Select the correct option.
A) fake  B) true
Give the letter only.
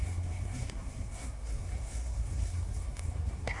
A